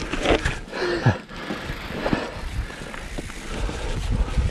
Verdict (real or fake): real